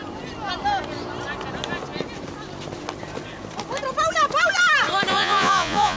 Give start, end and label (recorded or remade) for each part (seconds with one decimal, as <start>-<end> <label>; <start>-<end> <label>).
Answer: 0.0-5.1 recorded; 5.1-6.0 remade